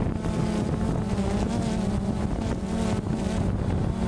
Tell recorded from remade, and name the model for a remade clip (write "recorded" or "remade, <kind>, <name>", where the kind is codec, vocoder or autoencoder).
recorded